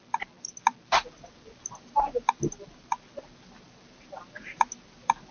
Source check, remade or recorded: recorded